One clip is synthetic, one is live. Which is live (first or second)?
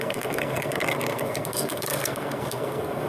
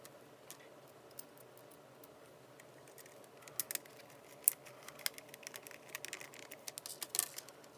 second